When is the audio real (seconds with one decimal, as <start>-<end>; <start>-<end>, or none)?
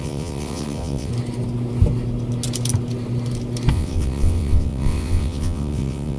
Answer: 1.1-3.7